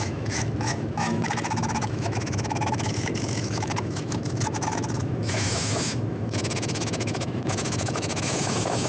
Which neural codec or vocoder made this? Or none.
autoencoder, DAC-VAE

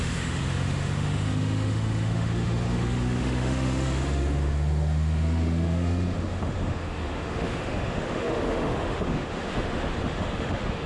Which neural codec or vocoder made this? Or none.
autoencoder, DAC-VAE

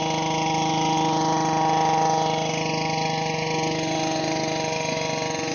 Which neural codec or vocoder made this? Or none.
none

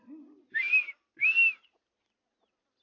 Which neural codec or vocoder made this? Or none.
none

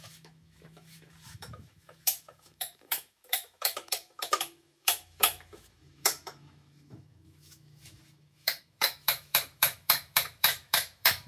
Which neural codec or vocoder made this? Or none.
autoencoder, DAC-VAE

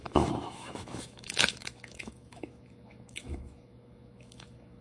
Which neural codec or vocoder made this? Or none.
autoencoder, DAC-VAE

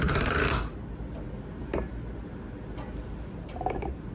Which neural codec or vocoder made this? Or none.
none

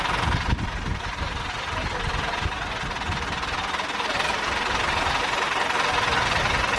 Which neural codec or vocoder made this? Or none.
none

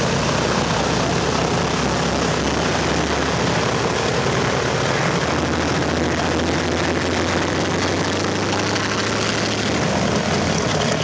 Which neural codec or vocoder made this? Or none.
none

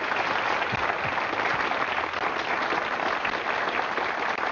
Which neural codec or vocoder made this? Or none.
none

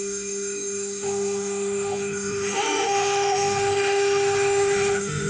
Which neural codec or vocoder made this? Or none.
autoencoder, DAC-VAE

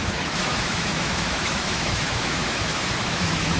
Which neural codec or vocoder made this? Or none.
autoencoder, DAC-VAE